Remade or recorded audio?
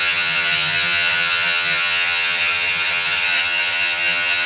remade